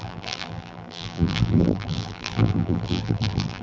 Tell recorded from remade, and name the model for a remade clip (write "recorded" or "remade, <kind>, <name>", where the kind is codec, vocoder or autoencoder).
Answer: remade, vocoder, BigVGAN v2